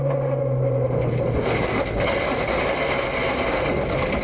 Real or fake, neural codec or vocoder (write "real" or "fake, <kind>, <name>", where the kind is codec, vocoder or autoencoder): real